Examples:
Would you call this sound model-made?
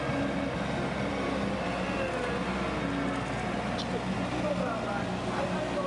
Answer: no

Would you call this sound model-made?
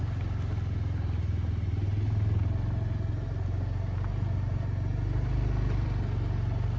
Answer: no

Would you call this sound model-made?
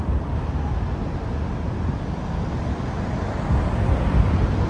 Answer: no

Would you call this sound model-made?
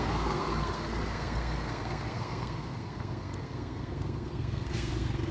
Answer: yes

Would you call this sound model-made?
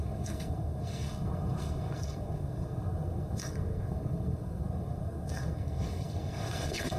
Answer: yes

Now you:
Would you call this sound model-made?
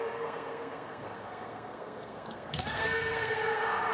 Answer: yes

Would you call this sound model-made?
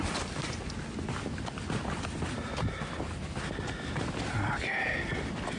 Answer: no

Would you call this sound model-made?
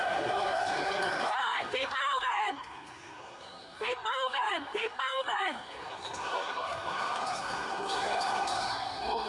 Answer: yes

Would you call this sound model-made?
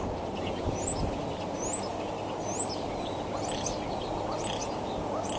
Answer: no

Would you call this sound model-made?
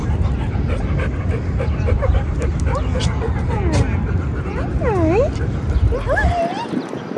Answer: no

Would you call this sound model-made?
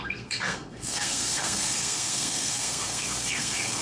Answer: yes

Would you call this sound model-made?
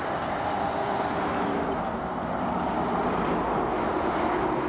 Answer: no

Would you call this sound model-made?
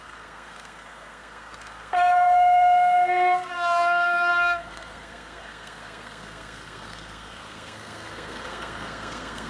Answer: yes